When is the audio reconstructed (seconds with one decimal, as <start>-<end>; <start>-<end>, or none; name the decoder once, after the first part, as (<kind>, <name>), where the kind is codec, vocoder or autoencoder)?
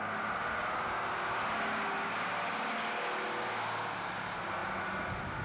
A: none